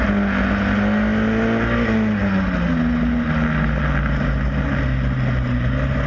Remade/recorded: recorded